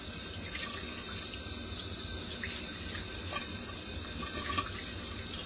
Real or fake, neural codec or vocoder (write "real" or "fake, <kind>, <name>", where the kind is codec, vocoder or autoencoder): real